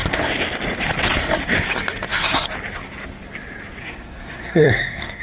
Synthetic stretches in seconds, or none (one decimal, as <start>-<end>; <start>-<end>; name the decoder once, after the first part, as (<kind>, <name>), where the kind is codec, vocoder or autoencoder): 3.8-5.2 (codec, SNAC)